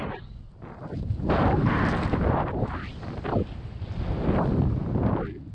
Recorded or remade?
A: recorded